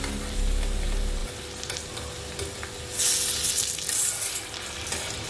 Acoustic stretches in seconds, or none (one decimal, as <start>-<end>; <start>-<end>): 0.0-5.3